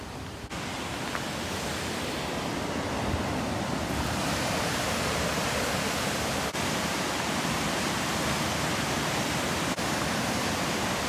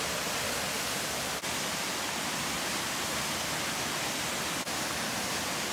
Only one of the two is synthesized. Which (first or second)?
first